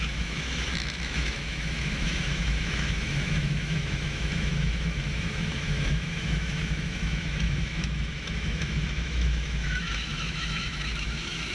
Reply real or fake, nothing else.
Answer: fake